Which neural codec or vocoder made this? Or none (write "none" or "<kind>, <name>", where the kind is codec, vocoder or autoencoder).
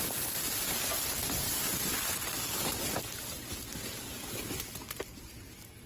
none